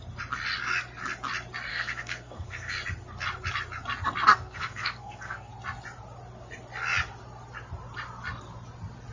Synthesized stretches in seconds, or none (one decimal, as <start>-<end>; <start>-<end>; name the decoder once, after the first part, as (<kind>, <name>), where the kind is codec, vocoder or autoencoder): 1.7-2.7 (codec, SNAC); 4.3-5.5